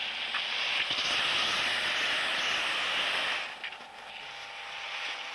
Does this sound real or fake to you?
real